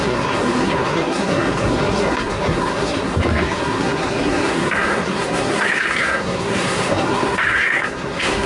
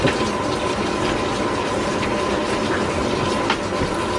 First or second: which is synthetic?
first